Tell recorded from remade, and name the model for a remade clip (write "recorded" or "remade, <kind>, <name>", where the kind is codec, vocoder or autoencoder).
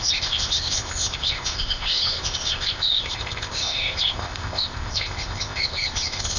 remade, codec, ZipCodec